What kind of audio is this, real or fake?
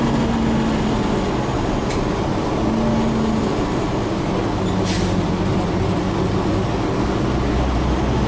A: real